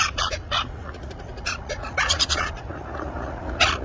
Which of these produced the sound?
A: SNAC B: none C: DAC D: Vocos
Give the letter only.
D